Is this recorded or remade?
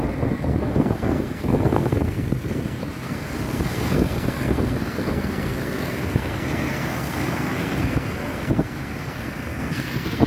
remade